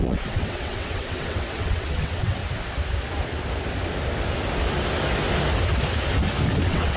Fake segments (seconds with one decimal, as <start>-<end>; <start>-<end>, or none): 0.0-2.4; 6.6-7.0